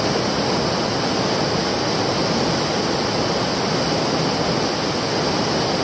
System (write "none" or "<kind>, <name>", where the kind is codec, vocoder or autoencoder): none